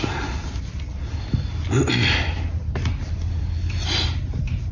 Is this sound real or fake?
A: real